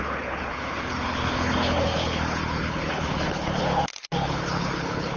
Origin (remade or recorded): remade